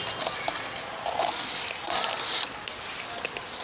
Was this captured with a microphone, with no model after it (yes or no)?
yes